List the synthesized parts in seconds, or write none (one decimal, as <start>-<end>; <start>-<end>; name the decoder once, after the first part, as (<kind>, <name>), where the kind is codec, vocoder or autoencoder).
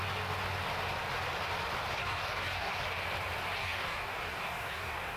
2.0-2.7 (codec, DAC); 3.6-5.2